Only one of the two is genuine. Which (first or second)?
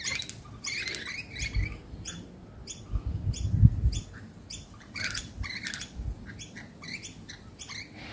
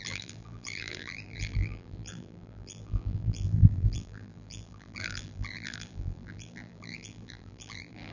first